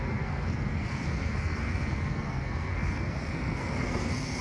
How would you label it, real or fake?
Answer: fake